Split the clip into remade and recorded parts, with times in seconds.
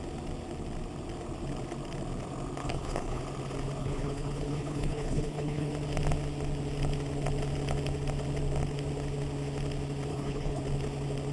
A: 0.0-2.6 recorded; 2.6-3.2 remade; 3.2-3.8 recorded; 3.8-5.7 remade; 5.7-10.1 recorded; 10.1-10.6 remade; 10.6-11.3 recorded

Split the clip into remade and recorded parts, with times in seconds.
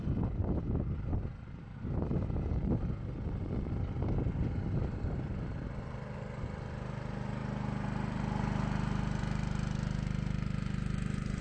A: 0.0-11.4 recorded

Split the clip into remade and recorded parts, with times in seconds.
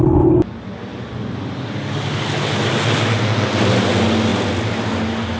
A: 0.0-5.4 recorded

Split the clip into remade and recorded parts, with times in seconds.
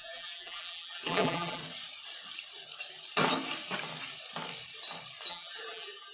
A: 0.0-1.6 remade; 1.6-5.3 recorded; 5.3-6.1 remade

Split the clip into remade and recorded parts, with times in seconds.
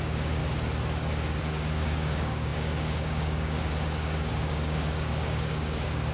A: 0.0-0.4 remade; 0.4-1.4 recorded; 1.4-6.1 remade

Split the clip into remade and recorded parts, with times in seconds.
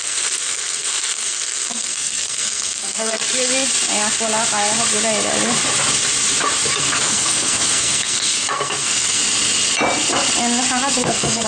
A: 0.0-3.2 remade; 3.2-6.8 recorded; 6.8-9.2 remade; 9.2-10.9 recorded; 10.9-11.5 remade